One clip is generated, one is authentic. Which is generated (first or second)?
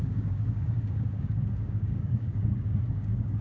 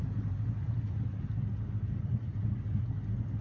first